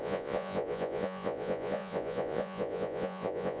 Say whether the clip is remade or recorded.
remade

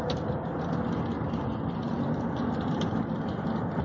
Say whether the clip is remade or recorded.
recorded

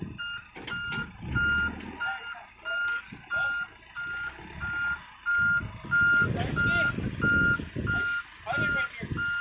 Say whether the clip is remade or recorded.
recorded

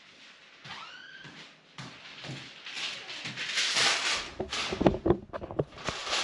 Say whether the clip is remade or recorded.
recorded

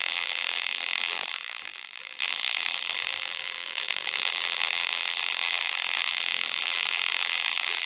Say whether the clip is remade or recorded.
remade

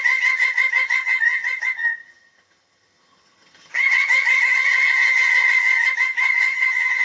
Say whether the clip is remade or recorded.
remade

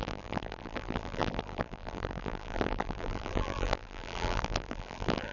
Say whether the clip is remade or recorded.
remade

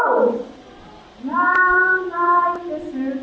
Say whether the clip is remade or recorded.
recorded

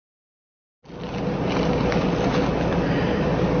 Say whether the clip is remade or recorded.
recorded